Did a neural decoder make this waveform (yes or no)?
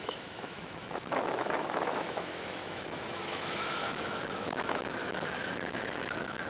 yes